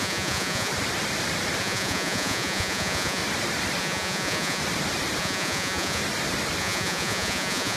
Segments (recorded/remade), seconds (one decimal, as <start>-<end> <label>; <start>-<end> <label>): 0.0-0.7 remade; 0.7-1.6 recorded; 1.6-3.2 remade; 3.2-3.8 recorded; 3.8-4.6 remade; 4.6-5.2 recorded; 5.2-6.0 remade; 6.0-6.6 recorded; 6.6-7.8 remade